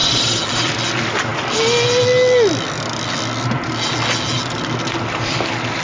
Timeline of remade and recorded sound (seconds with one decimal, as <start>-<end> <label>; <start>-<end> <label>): 0.0-5.8 recorded